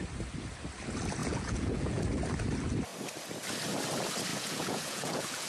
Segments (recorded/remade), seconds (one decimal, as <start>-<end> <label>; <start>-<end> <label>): 0.0-1.2 recorded; 1.2-2.0 remade; 2.0-4.3 recorded; 4.3-5.5 remade